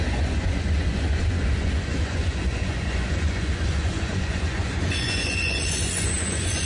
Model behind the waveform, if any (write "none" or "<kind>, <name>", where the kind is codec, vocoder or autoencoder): vocoder, Vocos